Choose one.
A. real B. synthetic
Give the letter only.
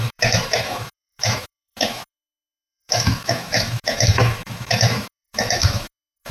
B